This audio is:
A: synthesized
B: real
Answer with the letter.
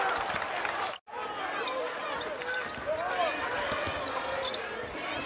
B